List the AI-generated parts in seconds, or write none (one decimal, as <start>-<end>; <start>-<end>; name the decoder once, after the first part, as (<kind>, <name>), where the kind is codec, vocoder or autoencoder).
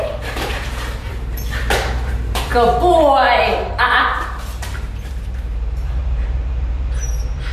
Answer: 0.0-2.5 (vocoder, BigVGAN v2); 3.4-7.5